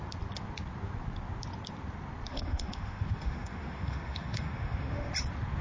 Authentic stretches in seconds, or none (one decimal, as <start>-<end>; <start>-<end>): 0.0-2.3; 5.1-5.6